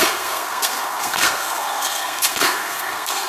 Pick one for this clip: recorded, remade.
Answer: remade